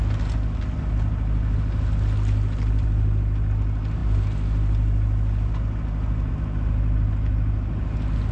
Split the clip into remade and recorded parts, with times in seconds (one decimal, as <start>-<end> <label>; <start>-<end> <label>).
0.0-8.3 recorded